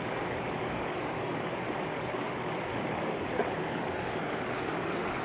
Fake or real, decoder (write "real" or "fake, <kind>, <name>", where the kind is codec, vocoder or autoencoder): fake, codec, DAC